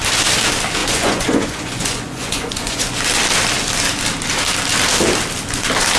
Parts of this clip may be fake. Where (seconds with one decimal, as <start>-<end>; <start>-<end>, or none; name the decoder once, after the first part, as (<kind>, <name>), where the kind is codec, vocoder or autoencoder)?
0.8-3.0 (vocoder, Vocos)

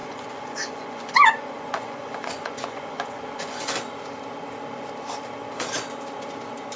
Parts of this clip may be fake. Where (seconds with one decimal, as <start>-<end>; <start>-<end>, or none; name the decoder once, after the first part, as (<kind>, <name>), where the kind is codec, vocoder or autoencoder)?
0.0-3.7 (vocoder, Vocos)

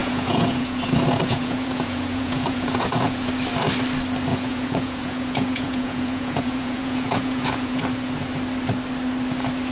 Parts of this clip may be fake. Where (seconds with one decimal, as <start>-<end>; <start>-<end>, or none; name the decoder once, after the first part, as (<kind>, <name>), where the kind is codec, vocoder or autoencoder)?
0.0-3.3 (vocoder, Vocos); 4.3-7.8

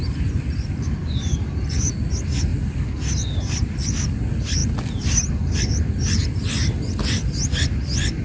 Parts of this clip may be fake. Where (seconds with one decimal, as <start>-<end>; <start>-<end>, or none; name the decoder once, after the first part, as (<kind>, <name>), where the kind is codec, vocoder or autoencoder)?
none